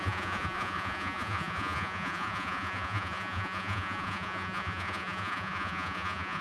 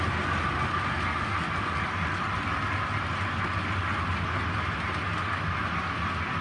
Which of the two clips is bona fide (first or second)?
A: second